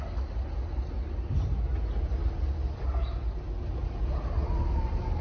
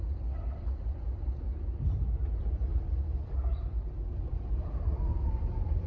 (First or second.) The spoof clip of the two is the second